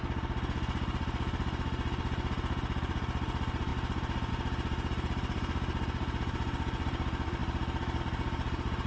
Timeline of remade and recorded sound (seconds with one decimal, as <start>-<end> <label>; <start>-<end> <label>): 0.0-8.9 recorded